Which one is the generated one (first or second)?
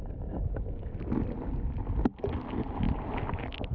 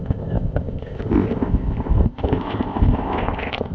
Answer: second